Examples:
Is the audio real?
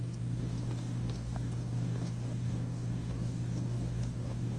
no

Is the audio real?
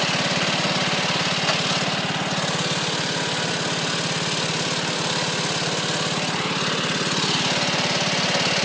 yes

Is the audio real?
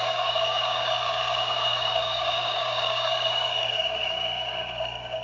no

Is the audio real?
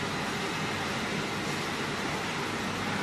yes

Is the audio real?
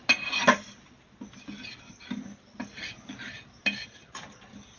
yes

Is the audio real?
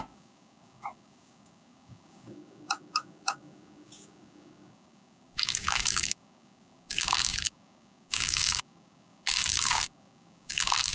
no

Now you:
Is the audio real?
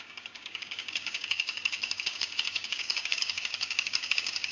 no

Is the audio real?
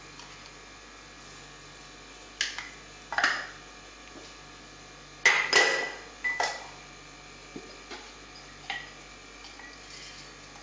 yes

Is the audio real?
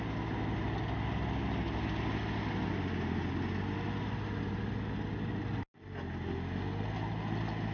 yes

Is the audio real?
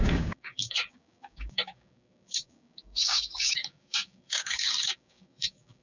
no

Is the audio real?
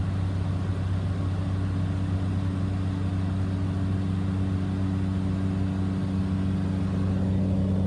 yes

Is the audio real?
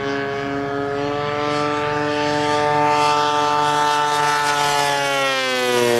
yes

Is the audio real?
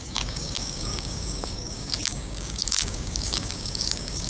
no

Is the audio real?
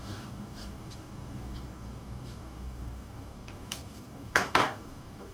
no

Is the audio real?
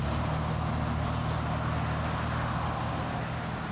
yes